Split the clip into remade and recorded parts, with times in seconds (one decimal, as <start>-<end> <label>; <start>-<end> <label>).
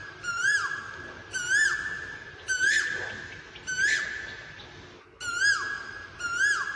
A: 0.0-0.8 remade; 0.8-1.6 recorded; 1.6-3.3 remade; 3.3-6.8 recorded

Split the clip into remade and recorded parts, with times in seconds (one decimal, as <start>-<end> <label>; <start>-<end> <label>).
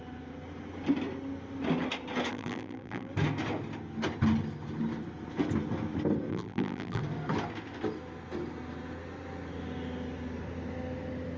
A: 0.0-2.3 recorded; 2.3-3.1 remade; 3.1-6.3 recorded; 6.3-7.0 remade; 7.0-11.4 recorded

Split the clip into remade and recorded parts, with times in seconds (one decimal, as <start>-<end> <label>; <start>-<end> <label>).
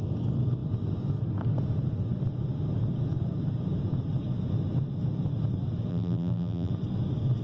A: 0.0-5.9 recorded; 5.9-6.7 remade; 6.7-7.4 recorded